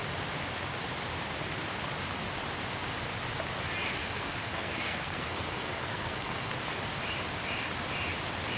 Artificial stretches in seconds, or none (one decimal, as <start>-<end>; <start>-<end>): 4.0-6.5